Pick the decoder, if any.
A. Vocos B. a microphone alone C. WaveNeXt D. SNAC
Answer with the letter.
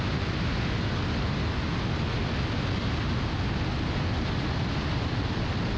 B